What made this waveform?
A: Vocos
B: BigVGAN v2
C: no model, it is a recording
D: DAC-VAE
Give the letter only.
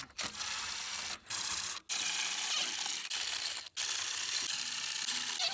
C